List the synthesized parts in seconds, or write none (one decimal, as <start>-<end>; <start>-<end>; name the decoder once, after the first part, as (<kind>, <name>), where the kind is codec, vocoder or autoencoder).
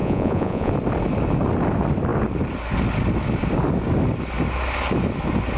0.0-0.7 (vocoder, Vocos)